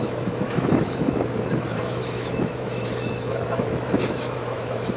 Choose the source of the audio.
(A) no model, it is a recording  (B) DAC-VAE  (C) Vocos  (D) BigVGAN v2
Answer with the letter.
B